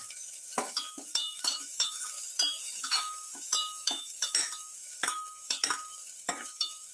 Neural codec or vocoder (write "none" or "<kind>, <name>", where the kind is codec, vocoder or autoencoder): autoencoder, DAC-VAE